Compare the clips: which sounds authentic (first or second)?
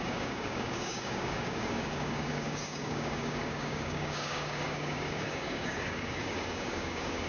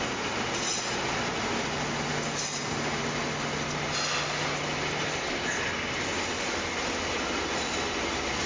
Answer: second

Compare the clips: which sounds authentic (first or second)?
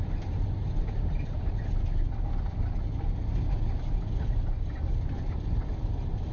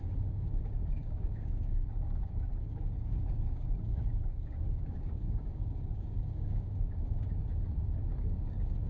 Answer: first